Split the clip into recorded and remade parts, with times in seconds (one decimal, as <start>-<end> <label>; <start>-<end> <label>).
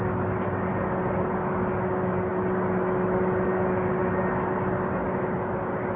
0.0-6.0 recorded